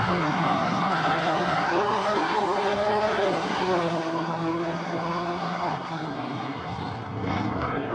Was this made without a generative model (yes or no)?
no